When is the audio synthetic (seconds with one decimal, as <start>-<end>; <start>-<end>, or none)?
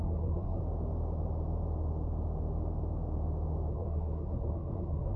0.0-0.6; 3.7-5.2